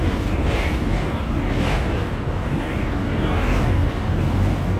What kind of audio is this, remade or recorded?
remade